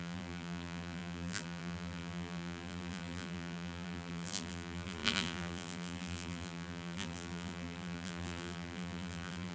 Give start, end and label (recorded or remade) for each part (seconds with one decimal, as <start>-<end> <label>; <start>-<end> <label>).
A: 0.0-9.5 remade